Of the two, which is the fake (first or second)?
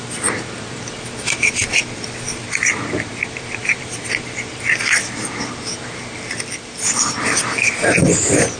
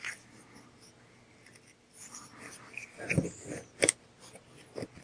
first